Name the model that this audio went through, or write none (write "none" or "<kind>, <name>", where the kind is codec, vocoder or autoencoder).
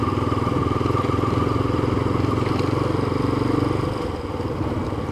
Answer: none